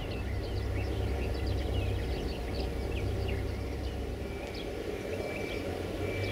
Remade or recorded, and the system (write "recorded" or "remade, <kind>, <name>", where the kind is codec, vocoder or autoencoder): recorded